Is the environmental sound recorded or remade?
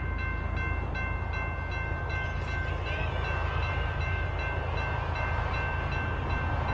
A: recorded